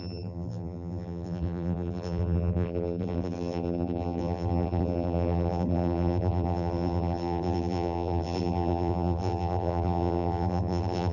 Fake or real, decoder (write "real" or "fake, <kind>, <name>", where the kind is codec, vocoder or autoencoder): fake, vocoder, BigVGAN v2